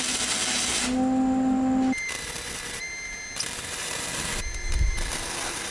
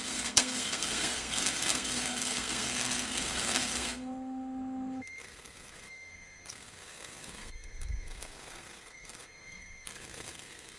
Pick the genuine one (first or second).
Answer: first